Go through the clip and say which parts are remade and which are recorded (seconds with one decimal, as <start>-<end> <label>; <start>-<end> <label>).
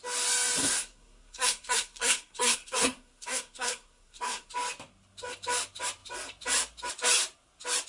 0.0-0.6 recorded; 0.6-4.5 remade; 4.5-7.9 recorded